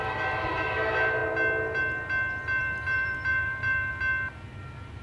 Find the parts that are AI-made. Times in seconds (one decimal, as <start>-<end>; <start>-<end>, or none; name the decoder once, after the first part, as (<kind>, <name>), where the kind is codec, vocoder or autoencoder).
2.6-3.9 (vocoder, BigVGAN v2)